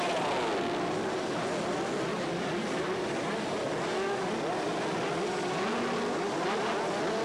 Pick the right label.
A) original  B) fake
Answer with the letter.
A